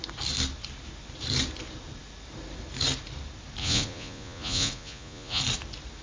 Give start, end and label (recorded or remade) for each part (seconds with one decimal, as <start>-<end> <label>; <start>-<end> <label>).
0.0-3.6 recorded; 3.6-5.4 remade; 5.4-6.0 recorded